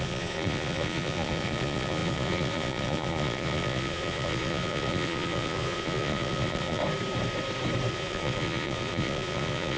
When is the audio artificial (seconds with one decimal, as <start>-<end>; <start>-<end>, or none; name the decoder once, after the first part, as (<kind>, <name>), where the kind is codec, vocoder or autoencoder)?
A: 0.0-6.8 (vocoder, Vocos); 7.9-9.8